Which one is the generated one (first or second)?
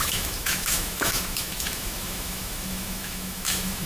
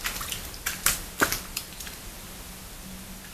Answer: first